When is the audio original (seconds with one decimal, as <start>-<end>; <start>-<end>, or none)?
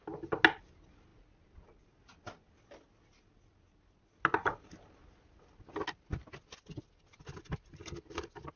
0.0-8.6